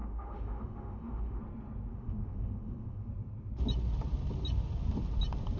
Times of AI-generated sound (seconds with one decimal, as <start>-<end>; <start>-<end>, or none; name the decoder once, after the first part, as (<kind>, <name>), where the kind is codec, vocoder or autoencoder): 0.0-1.4 (autoencoder, DAC-VAE); 1.9-3.1